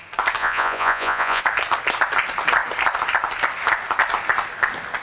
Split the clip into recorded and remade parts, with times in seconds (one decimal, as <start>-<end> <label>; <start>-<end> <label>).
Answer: 0.0-0.4 recorded; 0.4-1.4 remade; 1.4-5.0 recorded